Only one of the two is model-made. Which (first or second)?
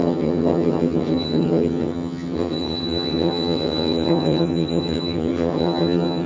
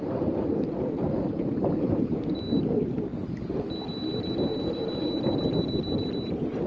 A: first